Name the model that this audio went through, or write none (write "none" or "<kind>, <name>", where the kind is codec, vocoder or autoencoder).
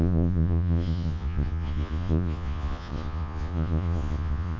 vocoder, Vocos